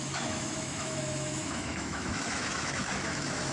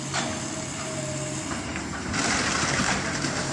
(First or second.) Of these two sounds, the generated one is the first